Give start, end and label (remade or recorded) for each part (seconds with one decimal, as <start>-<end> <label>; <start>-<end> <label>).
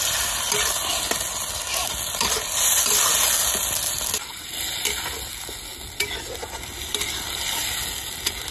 0.0-8.5 recorded